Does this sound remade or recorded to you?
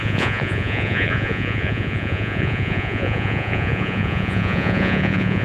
remade